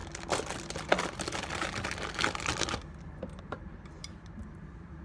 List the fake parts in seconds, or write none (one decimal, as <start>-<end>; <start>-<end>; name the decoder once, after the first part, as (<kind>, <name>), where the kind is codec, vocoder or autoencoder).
none